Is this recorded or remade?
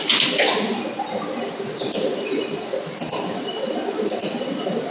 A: recorded